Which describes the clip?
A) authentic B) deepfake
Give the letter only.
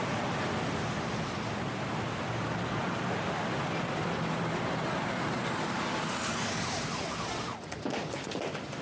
A